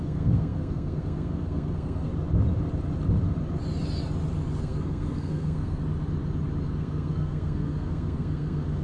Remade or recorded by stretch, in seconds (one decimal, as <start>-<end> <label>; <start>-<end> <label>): 0.0-2.1 remade; 2.1-4.6 recorded; 4.6-5.8 remade; 5.8-6.8 recorded; 6.8-8.8 remade

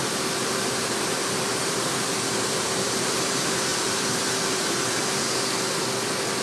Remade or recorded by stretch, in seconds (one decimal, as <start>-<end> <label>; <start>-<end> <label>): 0.0-6.4 remade

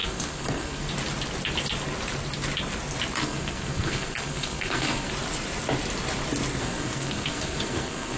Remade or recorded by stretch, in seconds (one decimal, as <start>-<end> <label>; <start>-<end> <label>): 0.0-0.9 remade; 0.9-3.2 recorded; 3.2-5.1 remade; 5.1-6.6 recorded; 6.6-8.2 remade